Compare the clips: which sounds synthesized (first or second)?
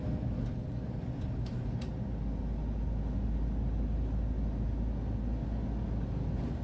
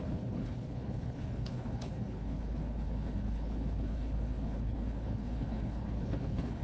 second